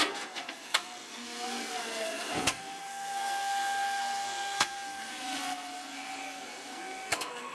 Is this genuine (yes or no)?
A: no